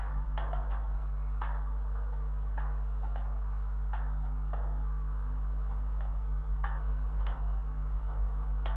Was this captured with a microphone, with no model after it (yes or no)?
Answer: no